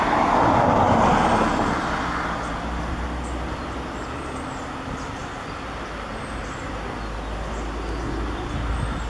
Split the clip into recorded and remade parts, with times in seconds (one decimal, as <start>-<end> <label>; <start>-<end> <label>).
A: 0.0-9.1 recorded